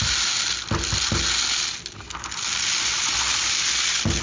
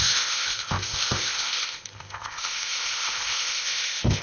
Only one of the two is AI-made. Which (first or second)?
second